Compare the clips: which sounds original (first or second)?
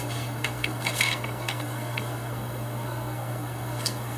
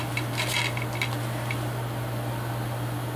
second